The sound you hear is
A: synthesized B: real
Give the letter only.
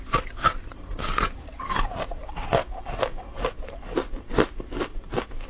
B